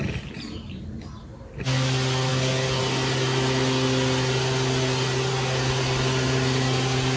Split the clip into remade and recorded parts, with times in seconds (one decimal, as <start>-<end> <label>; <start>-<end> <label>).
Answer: 0.0-2.3 recorded; 2.3-2.8 remade; 2.8-7.2 recorded